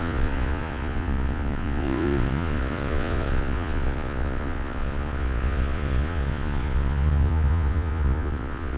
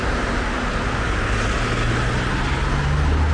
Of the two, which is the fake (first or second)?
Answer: first